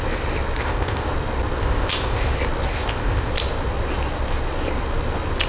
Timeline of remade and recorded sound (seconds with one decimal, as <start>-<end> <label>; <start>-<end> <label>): 0.0-0.6 recorded; 0.6-1.1 remade; 1.1-1.6 recorded; 1.6-2.3 remade; 2.3-2.7 recorded; 2.7-3.3 remade; 3.3-5.5 recorded